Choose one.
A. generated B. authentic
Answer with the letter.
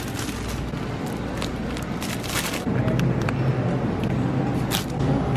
B